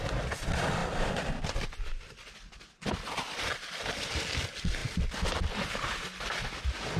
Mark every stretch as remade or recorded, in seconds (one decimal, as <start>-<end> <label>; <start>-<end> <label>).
0.0-0.8 recorded; 0.8-3.9 remade; 3.9-7.0 recorded